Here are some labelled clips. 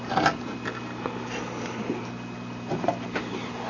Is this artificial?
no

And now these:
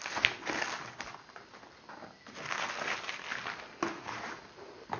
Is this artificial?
no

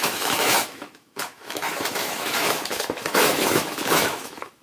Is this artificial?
yes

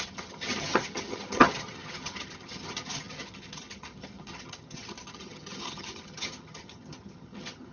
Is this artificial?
yes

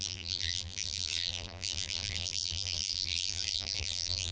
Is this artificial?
yes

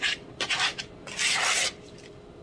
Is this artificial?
yes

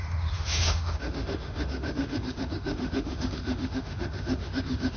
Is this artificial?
yes